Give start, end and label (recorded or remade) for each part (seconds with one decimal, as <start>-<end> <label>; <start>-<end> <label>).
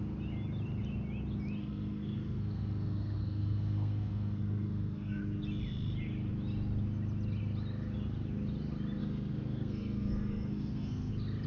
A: 0.0-1.6 recorded; 1.6-5.2 remade; 5.2-9.0 recorded; 9.0-11.1 remade; 11.1-11.5 recorded